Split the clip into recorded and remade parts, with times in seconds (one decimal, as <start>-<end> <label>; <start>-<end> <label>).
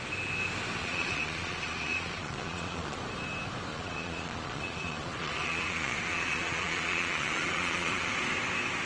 0.0-0.8 recorded; 0.8-3.0 remade; 3.0-3.7 recorded; 3.7-8.1 remade; 8.1-8.9 recorded